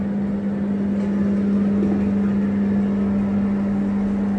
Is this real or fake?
real